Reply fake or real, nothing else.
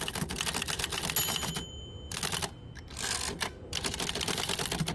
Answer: real